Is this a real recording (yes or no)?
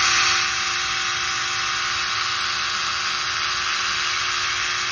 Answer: yes